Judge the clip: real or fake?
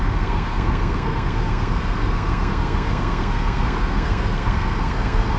fake